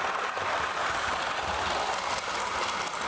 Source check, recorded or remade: recorded